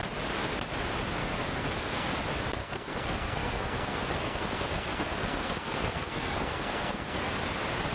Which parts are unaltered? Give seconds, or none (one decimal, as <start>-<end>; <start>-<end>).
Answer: 0.0-1.2; 2.1-2.6; 7.3-7.9